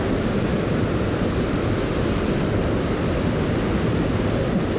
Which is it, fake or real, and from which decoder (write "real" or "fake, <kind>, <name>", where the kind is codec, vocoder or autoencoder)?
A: real